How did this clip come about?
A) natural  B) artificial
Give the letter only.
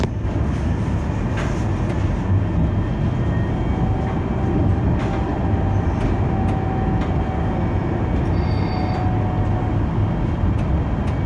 A